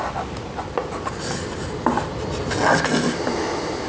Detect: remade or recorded recorded